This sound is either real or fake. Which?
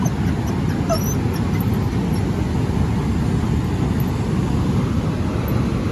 real